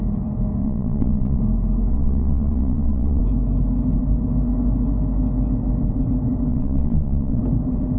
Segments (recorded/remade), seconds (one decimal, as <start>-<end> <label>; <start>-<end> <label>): 0.0-0.6 recorded; 0.6-1.4 remade; 1.4-1.9 recorded; 1.9-3.2 remade; 3.2-6.5 recorded; 6.5-7.4 remade; 7.4-8.0 recorded